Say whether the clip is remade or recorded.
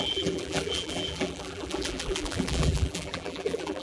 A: remade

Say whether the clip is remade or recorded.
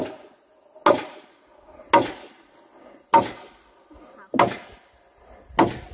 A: recorded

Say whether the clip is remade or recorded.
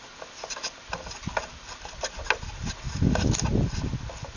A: recorded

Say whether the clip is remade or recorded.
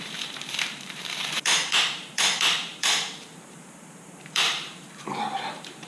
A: remade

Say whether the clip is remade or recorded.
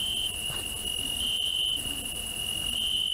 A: recorded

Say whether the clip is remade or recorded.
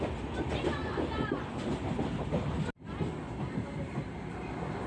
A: recorded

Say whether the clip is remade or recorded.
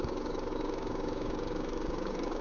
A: remade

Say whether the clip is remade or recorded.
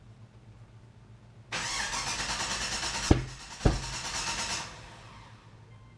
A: recorded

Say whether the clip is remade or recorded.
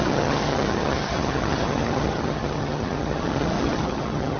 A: remade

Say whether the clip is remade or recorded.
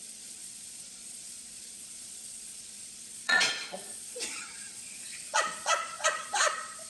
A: remade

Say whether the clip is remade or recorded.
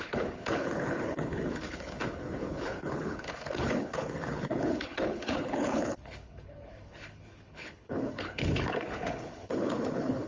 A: remade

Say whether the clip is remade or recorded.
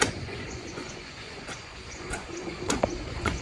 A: remade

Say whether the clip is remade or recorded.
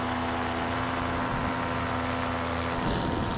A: recorded